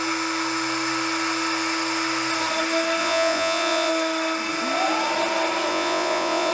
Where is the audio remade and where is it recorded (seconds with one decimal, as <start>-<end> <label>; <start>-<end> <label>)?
0.0-3.0 recorded; 3.0-3.9 remade; 3.9-5.7 recorded; 5.7-6.5 remade